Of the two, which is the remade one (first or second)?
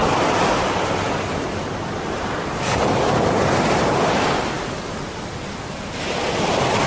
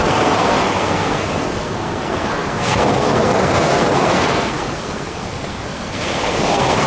second